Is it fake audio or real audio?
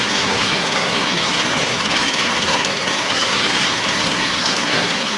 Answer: fake